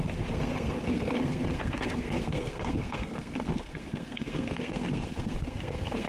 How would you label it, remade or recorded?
remade